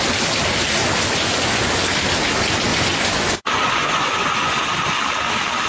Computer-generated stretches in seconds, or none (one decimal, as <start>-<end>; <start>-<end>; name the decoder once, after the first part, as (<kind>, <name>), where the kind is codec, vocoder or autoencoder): 0.8-1.6 (vocoder, Vocos); 2.7-4.6